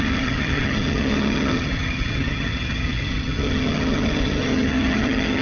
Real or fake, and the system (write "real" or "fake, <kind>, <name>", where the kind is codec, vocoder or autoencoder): fake, vocoder, HiFi-GAN